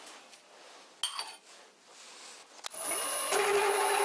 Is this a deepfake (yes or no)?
no